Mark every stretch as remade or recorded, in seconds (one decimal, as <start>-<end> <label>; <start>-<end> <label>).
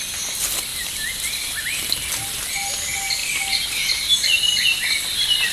0.0-0.7 recorded; 0.7-1.8 remade; 1.8-5.5 recorded